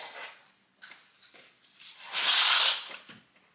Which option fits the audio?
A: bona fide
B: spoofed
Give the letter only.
A